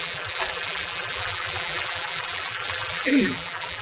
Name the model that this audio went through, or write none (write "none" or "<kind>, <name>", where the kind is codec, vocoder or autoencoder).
vocoder, BigVGAN v2